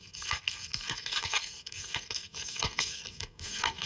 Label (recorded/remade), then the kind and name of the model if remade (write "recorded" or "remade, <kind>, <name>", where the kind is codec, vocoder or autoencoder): remade, codec, SNAC